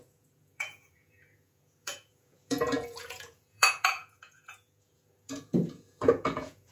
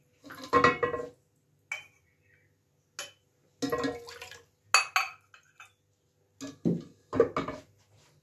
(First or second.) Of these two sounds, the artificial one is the first